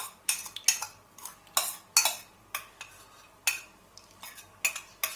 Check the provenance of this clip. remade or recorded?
recorded